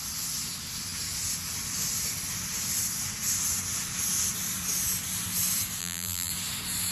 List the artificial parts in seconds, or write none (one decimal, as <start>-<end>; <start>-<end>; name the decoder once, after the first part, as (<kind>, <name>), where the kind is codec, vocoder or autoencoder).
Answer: 5.8-6.3 (vocoder, BigVGAN v2)